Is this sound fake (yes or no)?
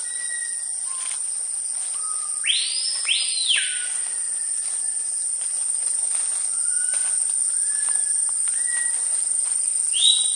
no